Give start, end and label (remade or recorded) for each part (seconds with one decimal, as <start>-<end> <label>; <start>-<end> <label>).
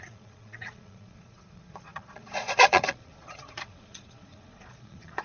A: 0.0-5.2 remade